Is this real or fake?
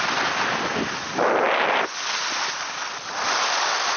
real